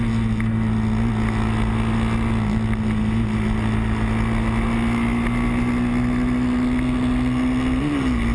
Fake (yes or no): no